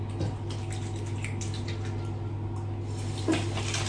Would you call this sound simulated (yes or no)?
no